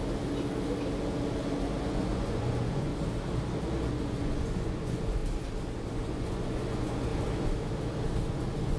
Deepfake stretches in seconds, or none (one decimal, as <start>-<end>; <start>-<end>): 1.6-2.9; 3.9-5.2; 5.9-7.1; 8.3-8.8